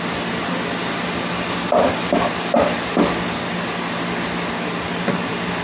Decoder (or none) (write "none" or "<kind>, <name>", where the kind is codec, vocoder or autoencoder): none